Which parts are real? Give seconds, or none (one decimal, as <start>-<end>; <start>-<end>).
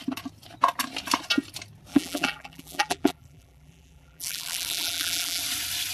0.0-1.9; 5.4-5.9